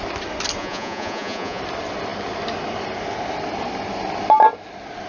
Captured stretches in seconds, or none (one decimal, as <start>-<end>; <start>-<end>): 0.0-0.6; 1.6-5.1